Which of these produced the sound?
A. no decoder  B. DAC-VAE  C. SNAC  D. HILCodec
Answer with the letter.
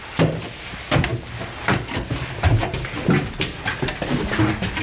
A